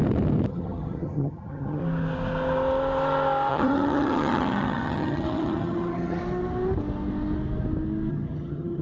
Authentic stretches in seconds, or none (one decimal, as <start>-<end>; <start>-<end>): 0.0-0.5; 1.8-3.5; 6.2-8.1